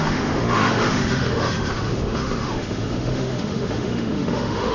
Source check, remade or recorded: remade